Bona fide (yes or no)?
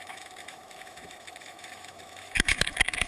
no